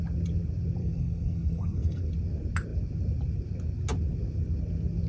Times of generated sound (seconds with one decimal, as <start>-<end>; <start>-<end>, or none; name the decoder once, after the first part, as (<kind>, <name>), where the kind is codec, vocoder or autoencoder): 0.8-2.1 (codec, SNAC)